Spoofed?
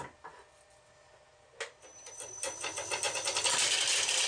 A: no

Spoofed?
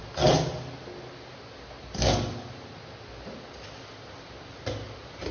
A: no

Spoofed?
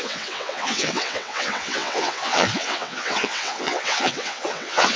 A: yes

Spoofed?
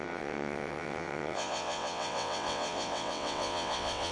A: yes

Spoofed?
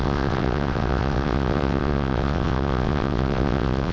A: yes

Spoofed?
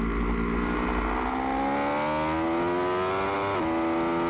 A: no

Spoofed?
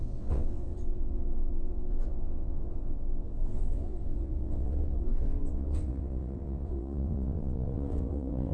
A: yes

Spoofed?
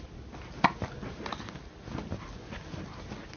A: no